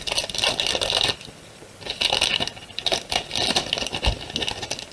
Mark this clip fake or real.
real